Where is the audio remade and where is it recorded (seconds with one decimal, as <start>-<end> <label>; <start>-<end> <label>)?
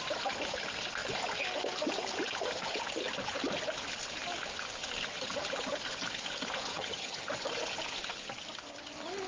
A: 0.0-6.7 recorded; 6.7-7.3 remade; 7.3-9.3 recorded